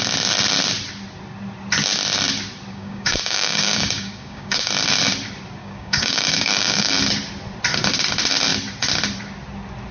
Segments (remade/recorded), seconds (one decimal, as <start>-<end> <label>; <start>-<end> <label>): 0.0-2.7 recorded; 2.7-4.7 remade; 4.7-5.6 recorded; 5.6-6.9 remade; 6.9-9.9 recorded